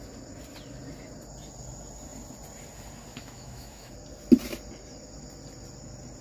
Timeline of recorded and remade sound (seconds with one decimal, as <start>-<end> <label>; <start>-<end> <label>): 0.0-3.1 recorded; 3.1-3.9 remade; 3.9-6.2 recorded